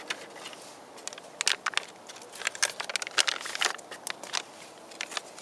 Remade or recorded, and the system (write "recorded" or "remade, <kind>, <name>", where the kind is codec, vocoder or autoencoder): recorded